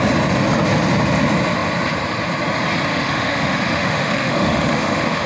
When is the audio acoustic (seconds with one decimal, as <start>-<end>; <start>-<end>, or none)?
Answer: 0.0-2.9